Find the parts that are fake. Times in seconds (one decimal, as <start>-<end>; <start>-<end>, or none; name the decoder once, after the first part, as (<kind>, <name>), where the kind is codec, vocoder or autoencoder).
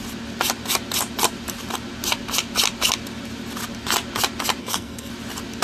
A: 4.6-5.1 (codec, SNAC)